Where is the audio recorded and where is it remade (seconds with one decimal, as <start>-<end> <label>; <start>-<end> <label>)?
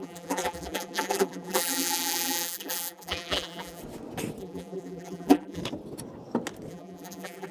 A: 0.0-3.8 remade; 3.8-4.4 recorded; 4.4-5.6 remade; 5.6-6.7 recorded; 6.7-7.5 remade